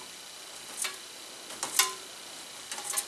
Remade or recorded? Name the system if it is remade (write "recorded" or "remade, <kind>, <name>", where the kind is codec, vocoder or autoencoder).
recorded